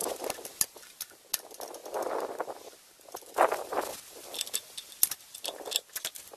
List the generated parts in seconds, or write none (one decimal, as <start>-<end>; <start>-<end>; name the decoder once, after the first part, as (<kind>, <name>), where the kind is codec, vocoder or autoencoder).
none